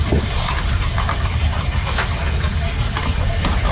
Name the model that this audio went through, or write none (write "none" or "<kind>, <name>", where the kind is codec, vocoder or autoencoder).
none